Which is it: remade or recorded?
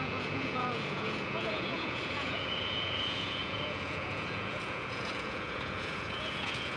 remade